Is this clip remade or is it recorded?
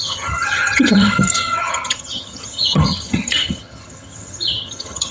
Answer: remade